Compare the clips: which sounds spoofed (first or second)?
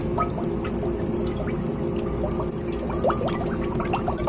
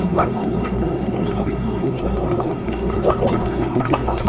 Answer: second